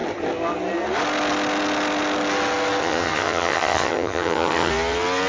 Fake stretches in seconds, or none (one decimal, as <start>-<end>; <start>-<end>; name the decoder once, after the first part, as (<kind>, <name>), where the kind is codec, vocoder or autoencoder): 2.8-4.7 (vocoder, HiFi-GAN)